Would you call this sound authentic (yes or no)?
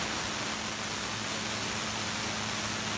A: yes